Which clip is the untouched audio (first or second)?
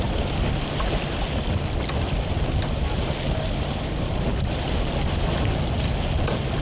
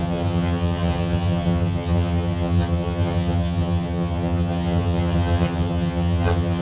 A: first